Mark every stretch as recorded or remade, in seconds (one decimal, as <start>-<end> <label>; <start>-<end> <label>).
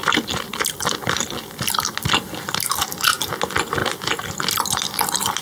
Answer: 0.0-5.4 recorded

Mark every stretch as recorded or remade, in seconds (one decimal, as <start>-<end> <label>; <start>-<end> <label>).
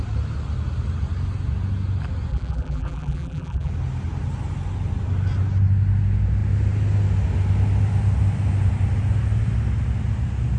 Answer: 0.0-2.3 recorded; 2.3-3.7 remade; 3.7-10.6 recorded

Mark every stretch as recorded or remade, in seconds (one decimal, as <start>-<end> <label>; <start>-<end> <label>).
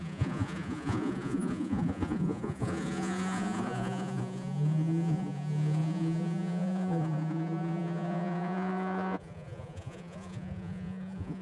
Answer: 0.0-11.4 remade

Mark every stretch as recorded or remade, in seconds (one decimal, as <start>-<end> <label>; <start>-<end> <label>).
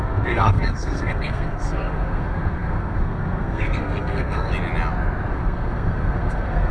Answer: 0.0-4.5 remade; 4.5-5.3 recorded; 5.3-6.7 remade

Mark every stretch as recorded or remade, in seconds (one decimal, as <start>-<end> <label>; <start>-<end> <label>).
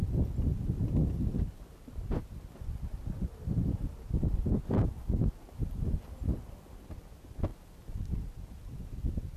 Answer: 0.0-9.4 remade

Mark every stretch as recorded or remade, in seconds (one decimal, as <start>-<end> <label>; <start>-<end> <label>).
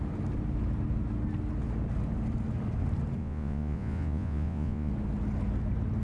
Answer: 0.0-3.2 recorded; 3.2-4.9 remade; 4.9-6.0 recorded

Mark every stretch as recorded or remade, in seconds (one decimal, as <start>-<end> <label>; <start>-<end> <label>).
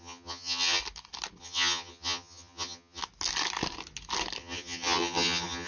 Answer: 0.0-0.8 remade; 0.8-1.4 recorded; 1.4-3.0 remade; 3.0-4.4 recorded; 4.4-5.7 remade